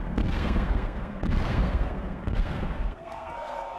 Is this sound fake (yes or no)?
yes